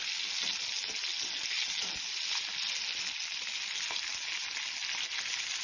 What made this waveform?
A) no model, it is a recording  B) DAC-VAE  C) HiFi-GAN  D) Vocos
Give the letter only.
A